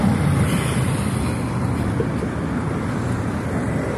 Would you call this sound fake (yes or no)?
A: no